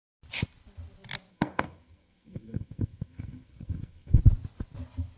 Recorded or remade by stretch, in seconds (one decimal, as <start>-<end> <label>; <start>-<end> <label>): 0.0-1.3 recorded; 1.3-4.2 remade; 4.2-5.2 recorded